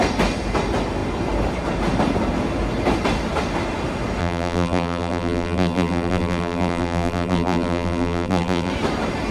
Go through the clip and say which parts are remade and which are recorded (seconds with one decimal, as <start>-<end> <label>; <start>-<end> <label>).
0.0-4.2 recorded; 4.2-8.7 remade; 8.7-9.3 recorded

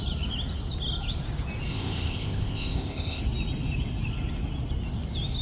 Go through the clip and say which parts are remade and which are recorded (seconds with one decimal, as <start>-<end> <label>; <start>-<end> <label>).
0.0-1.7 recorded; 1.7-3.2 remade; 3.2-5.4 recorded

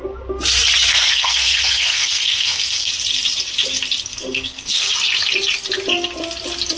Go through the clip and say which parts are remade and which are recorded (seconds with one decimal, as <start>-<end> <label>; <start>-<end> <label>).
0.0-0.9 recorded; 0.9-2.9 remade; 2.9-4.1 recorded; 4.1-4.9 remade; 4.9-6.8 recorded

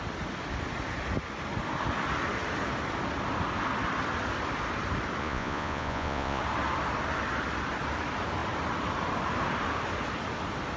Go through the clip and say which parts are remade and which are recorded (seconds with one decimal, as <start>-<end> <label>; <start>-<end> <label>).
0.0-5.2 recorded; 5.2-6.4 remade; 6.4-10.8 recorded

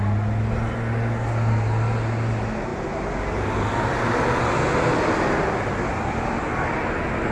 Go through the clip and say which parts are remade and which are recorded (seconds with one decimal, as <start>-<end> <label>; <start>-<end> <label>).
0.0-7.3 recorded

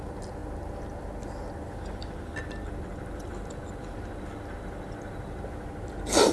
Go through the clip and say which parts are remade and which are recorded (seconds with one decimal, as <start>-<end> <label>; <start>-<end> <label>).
0.0-6.3 recorded